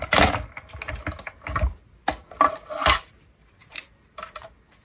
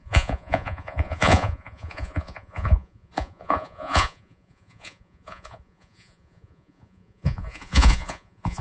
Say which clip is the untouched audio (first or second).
first